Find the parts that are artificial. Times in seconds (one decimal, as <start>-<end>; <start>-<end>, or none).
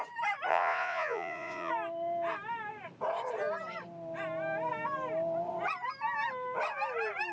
0.5-1.7